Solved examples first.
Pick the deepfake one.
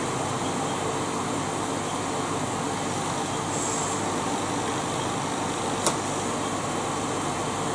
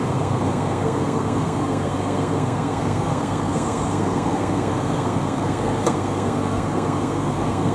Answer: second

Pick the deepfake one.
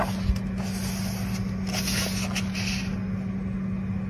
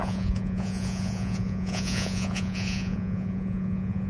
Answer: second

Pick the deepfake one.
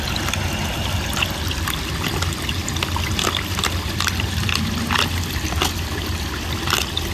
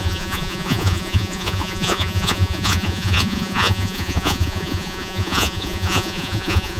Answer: second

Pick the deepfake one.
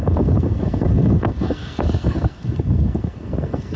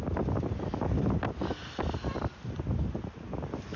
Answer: first